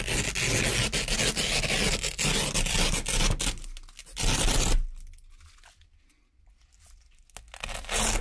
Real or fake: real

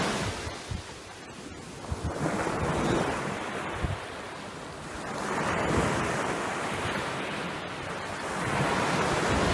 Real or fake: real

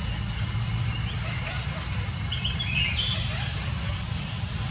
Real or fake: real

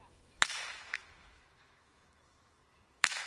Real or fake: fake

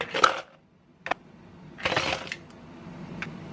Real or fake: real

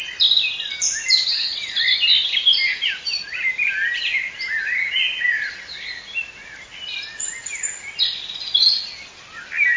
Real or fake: real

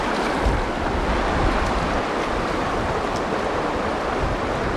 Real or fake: real